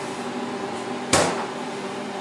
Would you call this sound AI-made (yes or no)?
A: yes